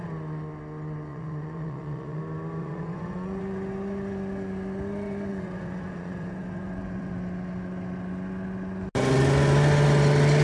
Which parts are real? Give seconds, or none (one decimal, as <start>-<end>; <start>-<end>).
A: 0.0-1.1; 2.2-2.6; 3.4-5.3; 7.1-10.4